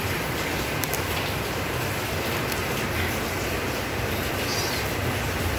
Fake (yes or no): yes